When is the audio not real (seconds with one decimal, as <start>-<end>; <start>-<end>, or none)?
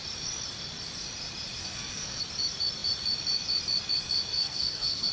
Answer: 1.6-2.2; 4.3-5.1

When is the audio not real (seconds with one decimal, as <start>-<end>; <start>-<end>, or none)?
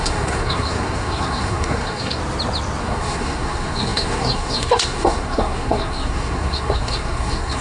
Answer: 0.0-2.2; 2.8-7.6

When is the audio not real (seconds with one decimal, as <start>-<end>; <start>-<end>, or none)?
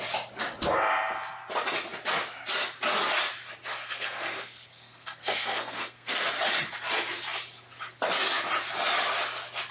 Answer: 3.8-6.3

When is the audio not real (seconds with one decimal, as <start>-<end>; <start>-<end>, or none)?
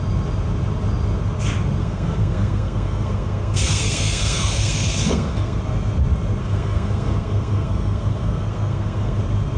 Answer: 1.8-5.6; 6.4-9.2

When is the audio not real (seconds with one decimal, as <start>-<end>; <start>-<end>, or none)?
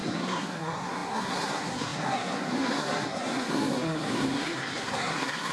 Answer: 0.0-5.5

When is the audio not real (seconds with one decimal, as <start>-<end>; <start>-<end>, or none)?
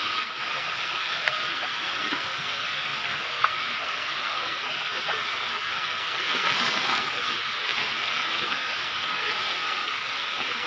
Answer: 0.0-10.7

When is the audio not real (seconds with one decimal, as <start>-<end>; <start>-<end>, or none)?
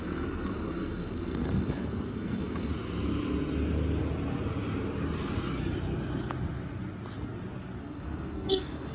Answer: 0.0-2.7; 7.8-8.9